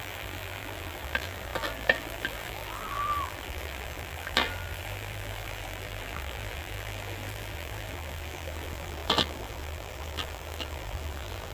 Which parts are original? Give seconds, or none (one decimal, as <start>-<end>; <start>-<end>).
none